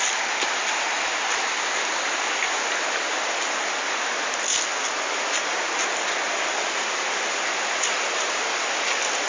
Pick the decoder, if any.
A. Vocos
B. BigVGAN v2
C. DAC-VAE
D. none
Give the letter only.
D